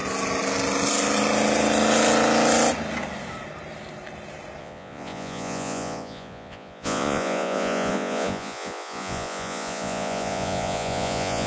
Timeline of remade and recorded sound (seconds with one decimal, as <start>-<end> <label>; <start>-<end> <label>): 0.0-4.6 recorded; 4.6-11.5 remade